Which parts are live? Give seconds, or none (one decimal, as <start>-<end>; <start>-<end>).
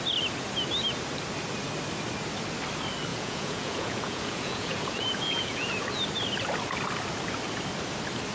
0.0-3.1; 5.7-8.3